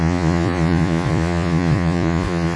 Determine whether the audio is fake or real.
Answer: fake